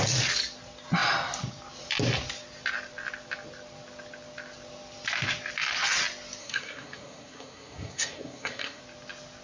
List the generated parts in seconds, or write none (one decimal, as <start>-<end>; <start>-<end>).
6.4-8.8